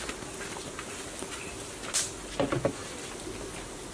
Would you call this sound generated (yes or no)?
no